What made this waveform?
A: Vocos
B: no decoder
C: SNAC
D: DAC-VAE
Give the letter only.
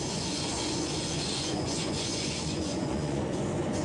A